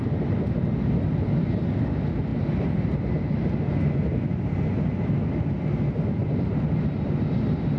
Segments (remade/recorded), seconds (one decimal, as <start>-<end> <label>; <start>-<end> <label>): 0.0-7.8 recorded